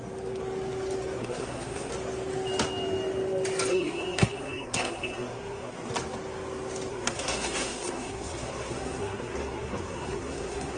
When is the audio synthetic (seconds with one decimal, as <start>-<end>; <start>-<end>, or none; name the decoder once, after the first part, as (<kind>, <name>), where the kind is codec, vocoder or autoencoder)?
1.2-1.9 (codec, SNAC); 3.7-5.9; 6.9-10.8

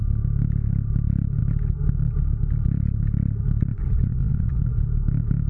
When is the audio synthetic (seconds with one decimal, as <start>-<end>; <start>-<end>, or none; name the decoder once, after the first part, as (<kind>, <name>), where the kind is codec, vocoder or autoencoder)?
3.7-4.6 (vocoder, Vocos)

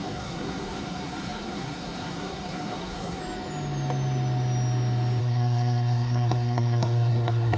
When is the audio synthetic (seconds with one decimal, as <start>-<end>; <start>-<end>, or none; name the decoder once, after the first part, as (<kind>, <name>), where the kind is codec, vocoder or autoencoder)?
0.0-3.2 (codec, SNAC); 5.2-7.6

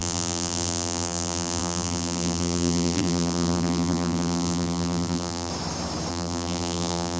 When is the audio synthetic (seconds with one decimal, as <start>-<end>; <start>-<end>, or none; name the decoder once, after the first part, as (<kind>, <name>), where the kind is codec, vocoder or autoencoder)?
0.0-5.5 (vocoder, BigVGAN v2); 6.1-7.2